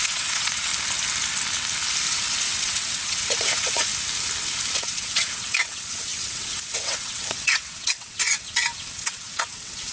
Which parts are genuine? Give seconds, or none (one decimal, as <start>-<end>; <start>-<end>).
0.7-2.1; 3.9-4.8